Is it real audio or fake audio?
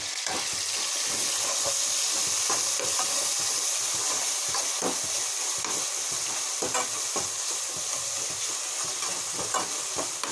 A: real